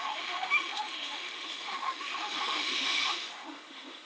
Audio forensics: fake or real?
fake